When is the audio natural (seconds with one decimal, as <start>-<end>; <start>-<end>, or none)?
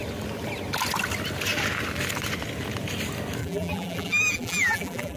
0.0-3.4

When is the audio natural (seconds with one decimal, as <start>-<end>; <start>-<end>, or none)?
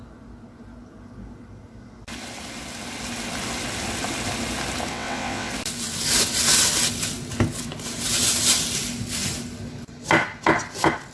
0.0-4.9; 5.5-11.1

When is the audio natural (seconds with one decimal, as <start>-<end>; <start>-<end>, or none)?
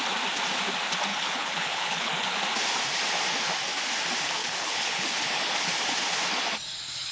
0.0-1.1; 2.1-4.4; 5.1-7.1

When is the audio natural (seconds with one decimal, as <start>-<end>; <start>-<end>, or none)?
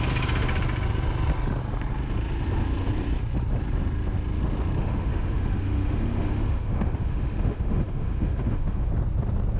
0.0-4.8; 8.9-9.6